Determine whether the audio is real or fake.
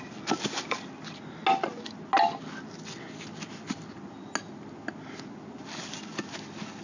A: real